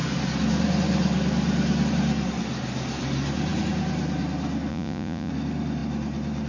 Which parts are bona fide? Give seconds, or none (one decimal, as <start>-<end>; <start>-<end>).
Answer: 0.0-4.7; 5.3-6.5